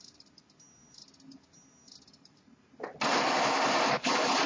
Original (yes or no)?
yes